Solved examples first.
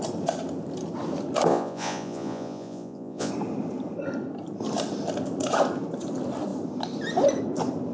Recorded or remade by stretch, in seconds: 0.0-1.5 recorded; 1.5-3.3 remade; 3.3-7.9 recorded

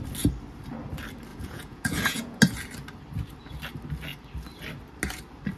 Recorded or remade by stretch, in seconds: 0.0-1.3 recorded; 1.3-2.4 remade; 2.4-5.6 recorded

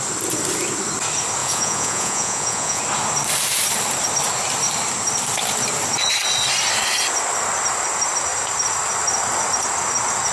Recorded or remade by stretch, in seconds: 0.0-1.4 recorded; 1.4-2.8 remade; 2.8-10.3 recorded